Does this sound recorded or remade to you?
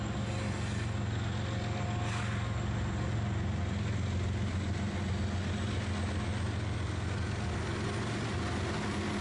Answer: recorded